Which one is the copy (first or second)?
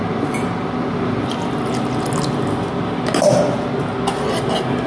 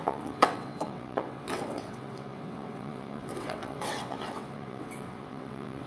second